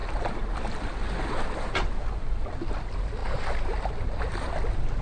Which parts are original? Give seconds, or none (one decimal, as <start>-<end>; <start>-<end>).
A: 0.0-5.0